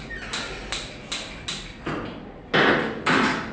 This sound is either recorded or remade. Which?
recorded